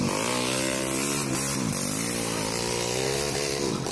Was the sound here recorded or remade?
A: recorded